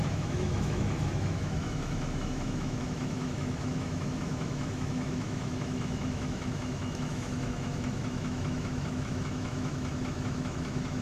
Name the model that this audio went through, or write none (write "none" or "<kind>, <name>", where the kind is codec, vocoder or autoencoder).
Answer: autoencoder, DAC-VAE